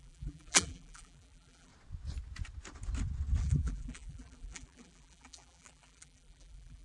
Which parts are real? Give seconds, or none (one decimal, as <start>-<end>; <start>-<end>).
1.7-3.4